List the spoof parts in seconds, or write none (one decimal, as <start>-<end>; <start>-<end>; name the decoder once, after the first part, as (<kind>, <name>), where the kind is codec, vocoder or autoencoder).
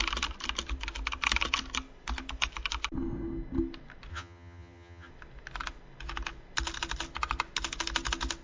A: 4.1-5.1 (vocoder, HiFi-GAN)